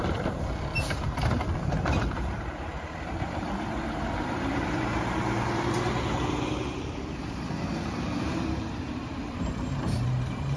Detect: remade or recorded remade